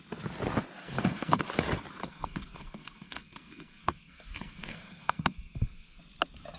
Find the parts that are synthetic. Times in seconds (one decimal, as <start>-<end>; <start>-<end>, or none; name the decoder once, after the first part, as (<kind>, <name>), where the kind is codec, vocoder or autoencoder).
0.8-1.4 (codec, SNAC); 2.0-6.0